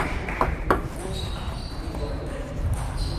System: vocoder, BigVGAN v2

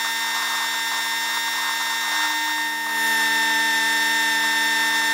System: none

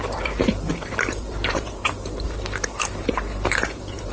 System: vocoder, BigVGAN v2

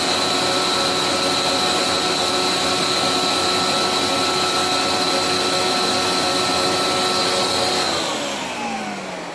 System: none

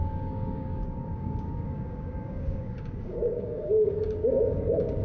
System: codec, DAC